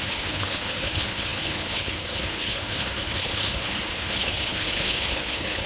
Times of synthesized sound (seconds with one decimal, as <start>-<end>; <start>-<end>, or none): 0.0-5.7